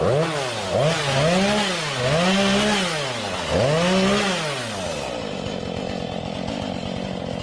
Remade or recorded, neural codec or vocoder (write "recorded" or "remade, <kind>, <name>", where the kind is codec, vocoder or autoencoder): recorded